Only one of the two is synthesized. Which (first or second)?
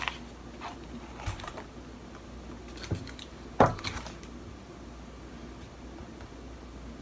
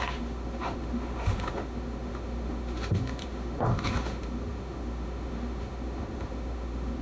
second